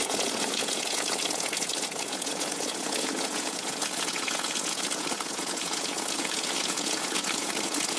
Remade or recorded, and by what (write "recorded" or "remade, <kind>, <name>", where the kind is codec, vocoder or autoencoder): remade, vocoder, Vocos